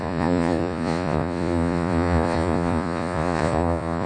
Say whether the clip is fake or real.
fake